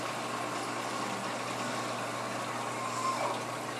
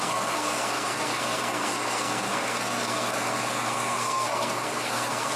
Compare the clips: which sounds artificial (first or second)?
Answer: second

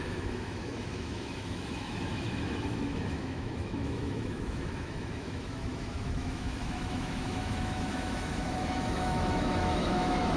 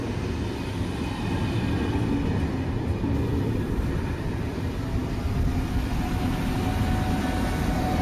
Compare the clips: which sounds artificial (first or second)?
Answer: first